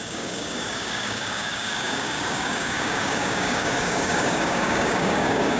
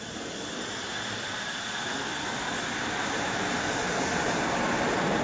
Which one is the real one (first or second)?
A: second